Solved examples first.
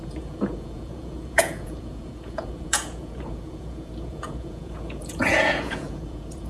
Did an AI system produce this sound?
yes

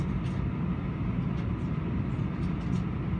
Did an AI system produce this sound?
no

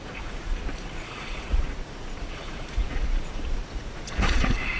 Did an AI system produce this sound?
yes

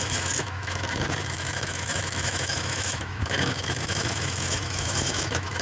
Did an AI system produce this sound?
yes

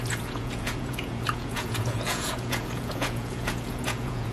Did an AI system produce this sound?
yes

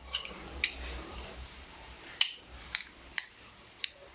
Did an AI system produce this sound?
yes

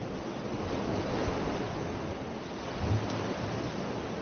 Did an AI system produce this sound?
no